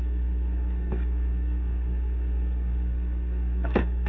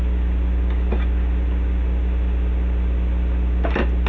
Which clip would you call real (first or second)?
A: second